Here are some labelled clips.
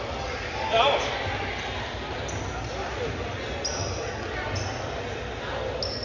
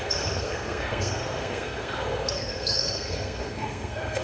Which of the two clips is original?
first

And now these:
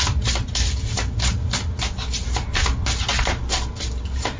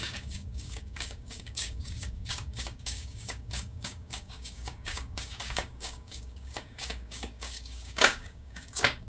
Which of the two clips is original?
first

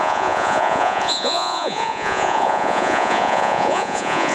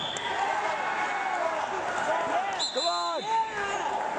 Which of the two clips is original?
second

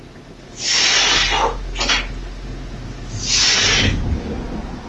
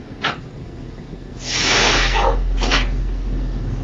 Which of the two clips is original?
first